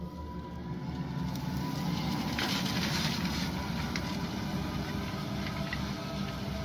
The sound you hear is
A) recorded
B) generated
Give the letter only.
A